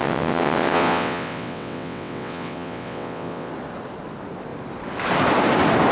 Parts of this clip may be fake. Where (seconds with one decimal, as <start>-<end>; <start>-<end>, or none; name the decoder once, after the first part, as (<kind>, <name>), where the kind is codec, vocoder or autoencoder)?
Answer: 0.0-3.5 (vocoder, WaveNeXt)